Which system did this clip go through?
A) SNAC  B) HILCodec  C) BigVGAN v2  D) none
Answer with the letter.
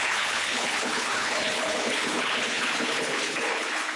B